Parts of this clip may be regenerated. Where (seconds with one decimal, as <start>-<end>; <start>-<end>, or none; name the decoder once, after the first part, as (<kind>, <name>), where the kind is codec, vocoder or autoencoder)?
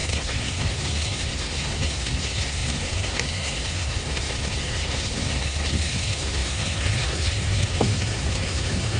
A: 0.0-9.0 (codec, SNAC)